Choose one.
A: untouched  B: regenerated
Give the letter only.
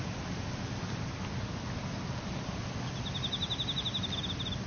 A